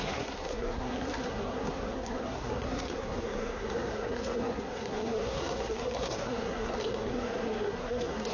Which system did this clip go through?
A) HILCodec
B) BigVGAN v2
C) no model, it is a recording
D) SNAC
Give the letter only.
D